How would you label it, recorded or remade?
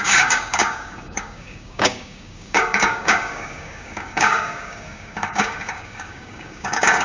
remade